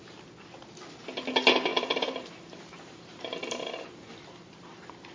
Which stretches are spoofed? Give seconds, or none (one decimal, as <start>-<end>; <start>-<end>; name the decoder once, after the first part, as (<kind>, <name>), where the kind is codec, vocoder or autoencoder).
1.7-5.1 (vocoder, BigVGAN v2)

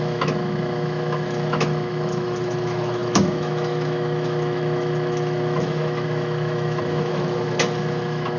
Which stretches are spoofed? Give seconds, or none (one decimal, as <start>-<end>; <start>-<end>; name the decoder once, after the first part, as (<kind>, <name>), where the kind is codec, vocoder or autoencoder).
0.0-8.4 (autoencoder, DAC-VAE)

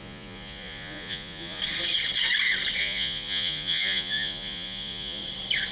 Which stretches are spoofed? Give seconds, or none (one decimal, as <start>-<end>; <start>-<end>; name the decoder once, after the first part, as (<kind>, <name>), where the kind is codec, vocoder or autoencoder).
0.0-1.6 (vocoder, Vocos); 2.8-5.2

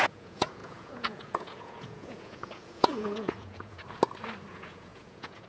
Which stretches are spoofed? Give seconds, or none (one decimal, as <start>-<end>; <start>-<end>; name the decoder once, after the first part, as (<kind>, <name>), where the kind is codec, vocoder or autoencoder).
0.0-3.8 (vocoder, Vocos); 4.5-5.5

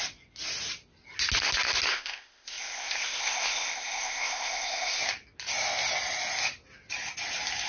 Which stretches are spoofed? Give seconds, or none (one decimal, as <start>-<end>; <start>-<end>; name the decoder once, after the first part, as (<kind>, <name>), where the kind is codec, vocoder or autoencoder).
1.9-5.0 (codec, ZipCodec)